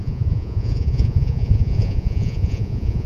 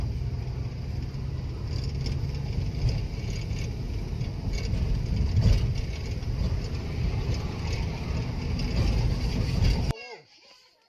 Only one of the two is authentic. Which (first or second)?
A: second